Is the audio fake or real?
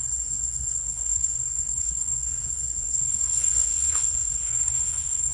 fake